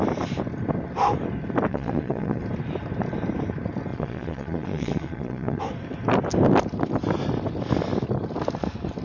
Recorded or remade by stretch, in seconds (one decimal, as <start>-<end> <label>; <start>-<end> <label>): 0.0-1.7 recorded; 1.7-2.4 remade; 2.4-3.9 recorded; 3.9-5.6 remade; 5.6-9.0 recorded

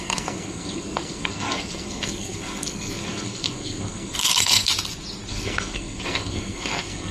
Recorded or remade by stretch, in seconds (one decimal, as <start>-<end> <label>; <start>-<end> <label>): 0.0-4.7 remade; 4.7-5.3 recorded; 5.3-7.1 remade

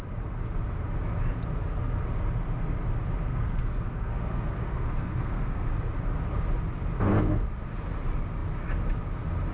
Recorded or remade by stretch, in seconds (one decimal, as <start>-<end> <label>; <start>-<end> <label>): 0.0-3.3 recorded; 3.3-5.7 remade; 5.7-7.1 recorded; 7.1-7.6 remade; 7.6-9.5 recorded

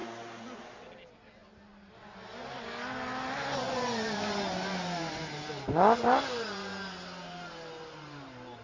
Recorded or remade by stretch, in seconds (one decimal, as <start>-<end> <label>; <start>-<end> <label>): 0.0-8.6 recorded

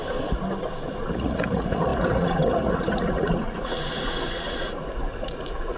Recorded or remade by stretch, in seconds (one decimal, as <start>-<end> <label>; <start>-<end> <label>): 0.0-1.1 recorded; 1.1-5.8 remade